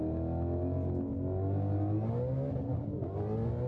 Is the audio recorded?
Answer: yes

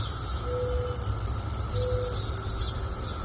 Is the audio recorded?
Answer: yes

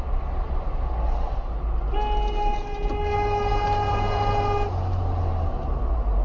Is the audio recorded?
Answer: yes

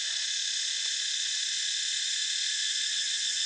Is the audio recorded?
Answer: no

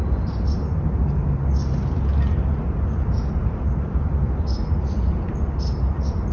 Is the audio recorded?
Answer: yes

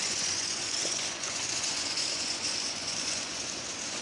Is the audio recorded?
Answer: no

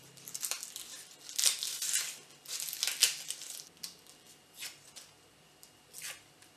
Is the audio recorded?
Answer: yes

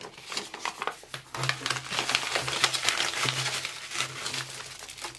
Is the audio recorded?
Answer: yes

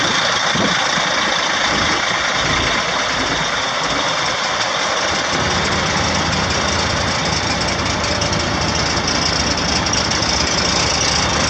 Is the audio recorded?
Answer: yes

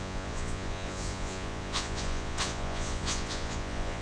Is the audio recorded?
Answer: no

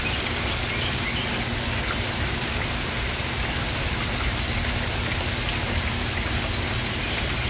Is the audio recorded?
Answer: yes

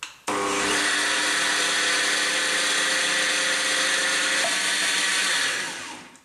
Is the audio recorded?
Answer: yes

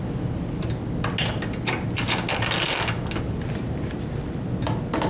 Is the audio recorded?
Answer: yes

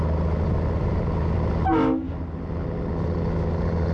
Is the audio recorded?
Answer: yes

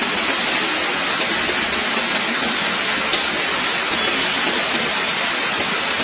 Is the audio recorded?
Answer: yes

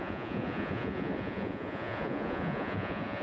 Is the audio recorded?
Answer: no